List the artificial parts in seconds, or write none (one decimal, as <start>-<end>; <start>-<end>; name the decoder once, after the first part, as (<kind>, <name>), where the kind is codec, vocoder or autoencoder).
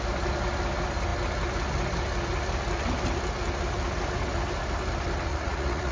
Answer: 5.3-5.9 (vocoder, Vocos)